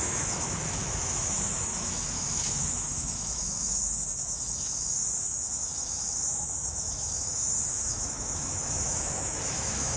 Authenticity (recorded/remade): remade